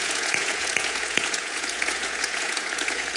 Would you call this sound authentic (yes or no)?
no